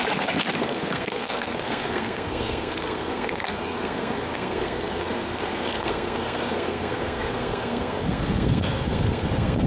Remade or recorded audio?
remade